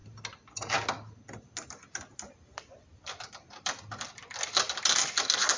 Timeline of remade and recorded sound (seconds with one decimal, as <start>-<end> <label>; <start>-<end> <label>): 0.0-5.6 recorded